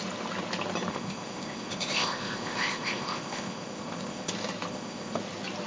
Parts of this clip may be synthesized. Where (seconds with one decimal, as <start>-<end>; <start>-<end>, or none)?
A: 0.9-4.3; 4.7-5.2